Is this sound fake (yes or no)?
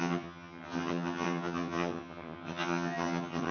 yes